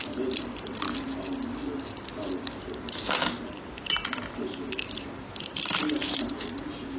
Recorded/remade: recorded